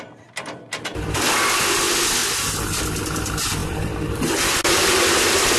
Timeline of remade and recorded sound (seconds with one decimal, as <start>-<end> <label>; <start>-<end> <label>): 0.0-2.2 recorded; 2.2-2.8 remade; 2.8-3.6 recorded; 3.6-4.3 remade; 4.3-5.6 recorded